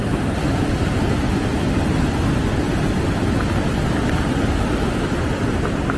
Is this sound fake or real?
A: real